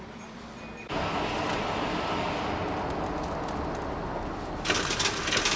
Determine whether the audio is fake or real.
real